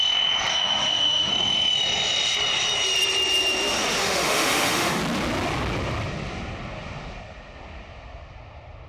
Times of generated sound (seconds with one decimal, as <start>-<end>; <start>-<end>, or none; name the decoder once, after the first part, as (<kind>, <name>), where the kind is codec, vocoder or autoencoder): 0.5-1.3 (autoencoder, DAC-VAE); 4.0-5.0